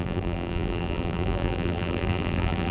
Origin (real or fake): fake